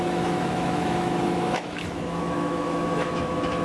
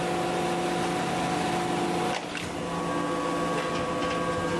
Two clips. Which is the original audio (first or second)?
second